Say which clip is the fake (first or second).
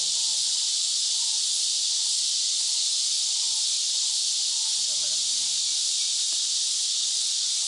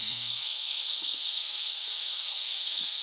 second